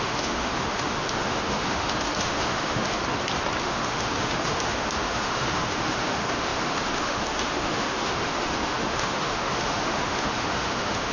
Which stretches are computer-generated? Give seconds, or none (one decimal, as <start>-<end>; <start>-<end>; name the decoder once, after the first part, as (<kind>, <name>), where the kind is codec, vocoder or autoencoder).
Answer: 0.0-3.0 (autoencoder, DAC-VAE); 3.6-11.1